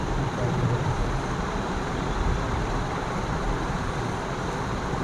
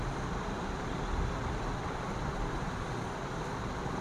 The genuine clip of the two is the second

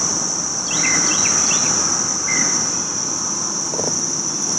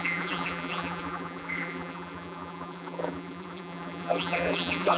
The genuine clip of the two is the first